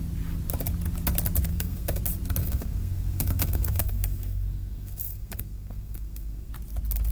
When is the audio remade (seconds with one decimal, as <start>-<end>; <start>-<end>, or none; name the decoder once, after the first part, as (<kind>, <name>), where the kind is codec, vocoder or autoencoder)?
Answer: 1.5-2.0 (codec, SNAC); 2.4-6.5